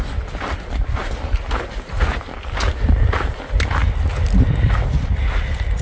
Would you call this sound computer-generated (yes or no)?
no